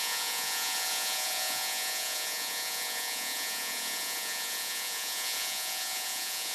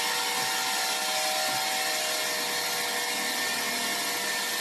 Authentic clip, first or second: second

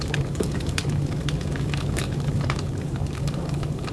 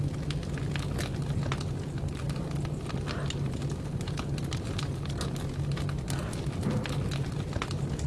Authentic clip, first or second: second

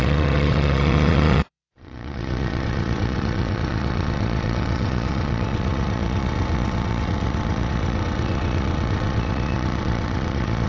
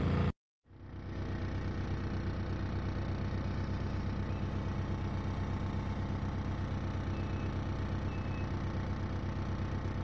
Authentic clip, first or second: second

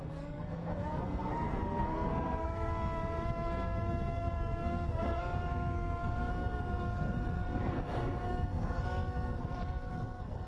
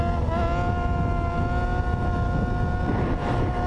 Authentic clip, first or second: second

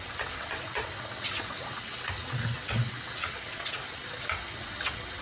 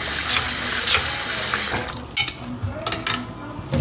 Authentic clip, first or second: second